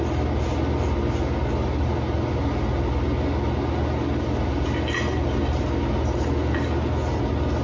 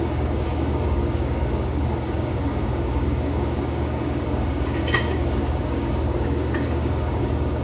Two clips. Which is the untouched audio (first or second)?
first